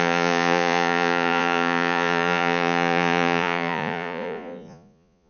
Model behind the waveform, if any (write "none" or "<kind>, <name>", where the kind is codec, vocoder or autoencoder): vocoder, Vocos